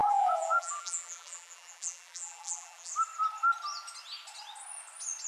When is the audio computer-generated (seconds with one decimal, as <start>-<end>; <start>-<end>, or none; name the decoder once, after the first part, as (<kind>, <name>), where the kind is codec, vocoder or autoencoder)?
0.0-2.9 (vocoder, BigVGAN v2)